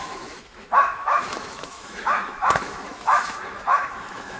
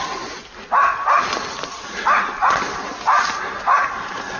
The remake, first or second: first